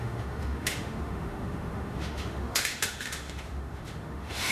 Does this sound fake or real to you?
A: fake